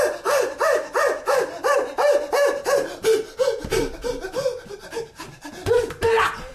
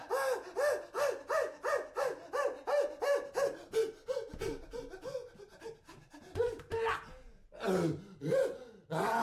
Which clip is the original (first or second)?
second